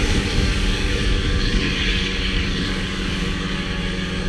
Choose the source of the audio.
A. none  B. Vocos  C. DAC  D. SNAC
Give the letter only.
C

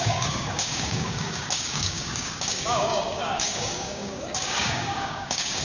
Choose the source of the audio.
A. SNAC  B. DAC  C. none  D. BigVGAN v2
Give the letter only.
B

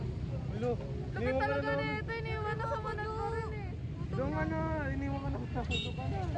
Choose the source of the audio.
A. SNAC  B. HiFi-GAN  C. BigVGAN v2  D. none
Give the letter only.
D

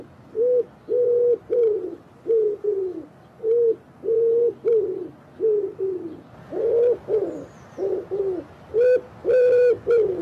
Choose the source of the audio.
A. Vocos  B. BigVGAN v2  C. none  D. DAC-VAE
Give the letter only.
C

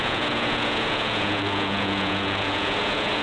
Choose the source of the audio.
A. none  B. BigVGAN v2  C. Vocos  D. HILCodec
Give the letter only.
C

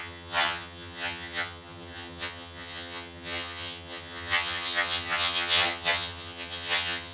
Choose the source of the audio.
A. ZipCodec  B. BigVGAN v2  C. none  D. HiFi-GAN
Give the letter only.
D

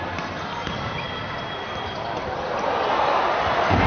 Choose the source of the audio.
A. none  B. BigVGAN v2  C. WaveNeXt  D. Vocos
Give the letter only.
A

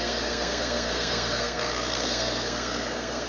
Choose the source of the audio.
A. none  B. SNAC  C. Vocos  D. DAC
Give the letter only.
B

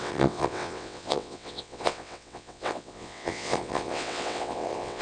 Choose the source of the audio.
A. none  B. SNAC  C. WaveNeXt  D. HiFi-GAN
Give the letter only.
C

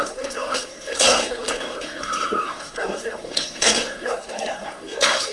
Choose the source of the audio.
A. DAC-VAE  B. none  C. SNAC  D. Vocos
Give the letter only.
C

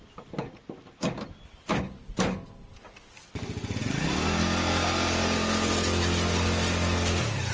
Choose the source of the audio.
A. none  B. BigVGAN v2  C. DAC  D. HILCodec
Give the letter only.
A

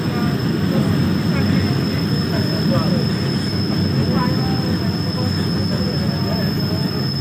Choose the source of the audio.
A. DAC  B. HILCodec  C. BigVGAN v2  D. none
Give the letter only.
D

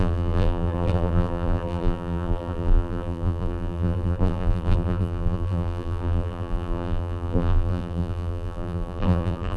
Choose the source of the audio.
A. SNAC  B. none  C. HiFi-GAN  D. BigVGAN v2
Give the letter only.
D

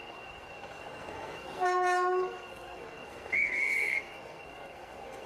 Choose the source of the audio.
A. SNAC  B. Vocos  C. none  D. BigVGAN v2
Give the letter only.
A